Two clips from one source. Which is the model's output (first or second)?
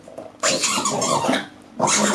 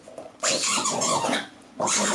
second